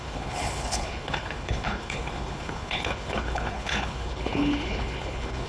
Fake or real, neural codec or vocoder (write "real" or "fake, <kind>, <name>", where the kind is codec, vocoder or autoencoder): fake, codec, HILCodec